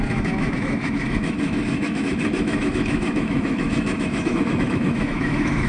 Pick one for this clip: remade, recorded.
remade